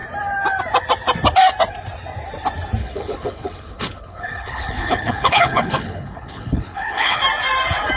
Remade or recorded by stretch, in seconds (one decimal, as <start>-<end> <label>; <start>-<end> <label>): 0.0-2.8 recorded; 2.8-7.2 remade; 7.2-8.0 recorded